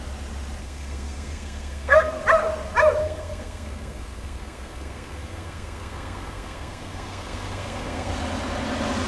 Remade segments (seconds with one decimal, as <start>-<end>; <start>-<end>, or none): 0.6-2.2; 3.0-8.1

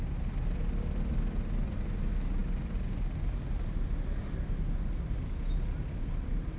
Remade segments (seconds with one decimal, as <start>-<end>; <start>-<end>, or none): none

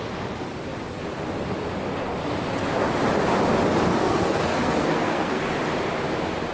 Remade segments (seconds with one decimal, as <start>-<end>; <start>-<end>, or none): 3.9-5.4

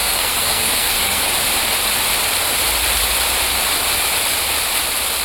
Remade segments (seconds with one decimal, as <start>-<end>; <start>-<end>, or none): 0.0-1.3

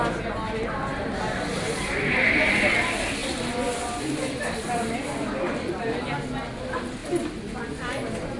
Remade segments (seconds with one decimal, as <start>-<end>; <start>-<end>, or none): none